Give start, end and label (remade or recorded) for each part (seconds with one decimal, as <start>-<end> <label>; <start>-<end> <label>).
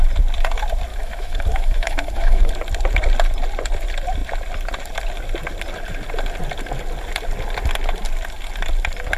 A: 0.0-0.9 recorded; 0.9-2.5 remade; 2.5-9.2 recorded